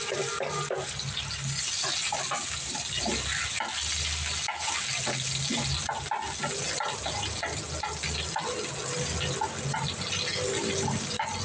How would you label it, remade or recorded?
recorded